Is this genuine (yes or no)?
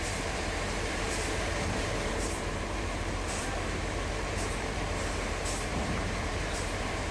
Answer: no